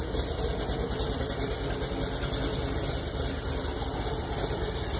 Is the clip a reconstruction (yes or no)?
no